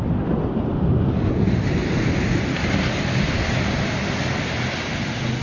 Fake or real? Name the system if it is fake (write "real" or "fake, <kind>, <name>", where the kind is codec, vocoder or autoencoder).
real